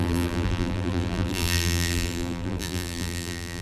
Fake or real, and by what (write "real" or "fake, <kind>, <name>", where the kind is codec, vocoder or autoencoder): fake, vocoder, BigVGAN v2